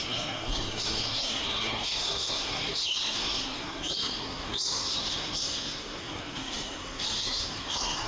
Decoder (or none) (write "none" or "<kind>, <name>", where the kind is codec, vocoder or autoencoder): codec, SNAC